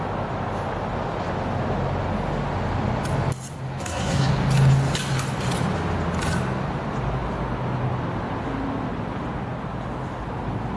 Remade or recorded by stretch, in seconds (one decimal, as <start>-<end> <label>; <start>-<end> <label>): 0.0-3.8 recorded; 3.8-4.3 remade; 4.3-10.8 recorded